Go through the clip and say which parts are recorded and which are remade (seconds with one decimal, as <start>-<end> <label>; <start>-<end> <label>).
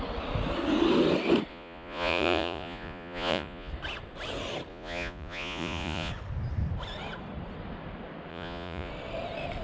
0.0-1.5 recorded; 1.5-3.7 remade; 3.7-4.7 recorded; 4.7-6.1 remade; 6.1-8.3 recorded; 8.3-8.9 remade; 8.9-9.6 recorded